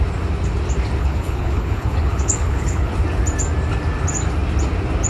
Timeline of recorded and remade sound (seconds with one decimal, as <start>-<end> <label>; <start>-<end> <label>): 0.0-1.0 recorded; 1.0-2.9 remade; 2.9-5.1 recorded